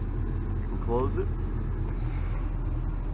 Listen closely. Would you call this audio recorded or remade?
recorded